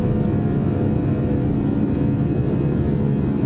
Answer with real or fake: real